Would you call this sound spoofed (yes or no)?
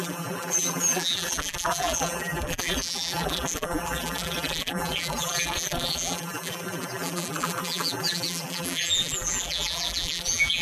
yes